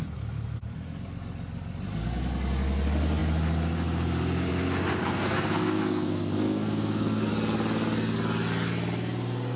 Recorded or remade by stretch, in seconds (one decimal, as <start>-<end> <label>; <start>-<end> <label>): 0.0-5.0 recorded; 5.0-7.3 remade; 7.3-9.6 recorded